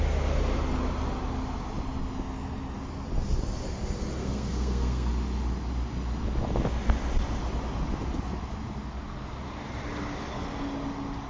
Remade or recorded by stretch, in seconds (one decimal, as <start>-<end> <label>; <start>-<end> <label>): 0.0-4.2 recorded; 4.2-5.1 remade; 5.1-11.3 recorded